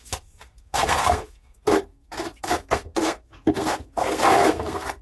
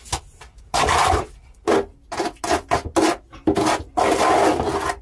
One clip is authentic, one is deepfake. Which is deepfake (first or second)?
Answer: first